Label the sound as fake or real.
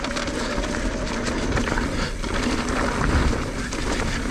real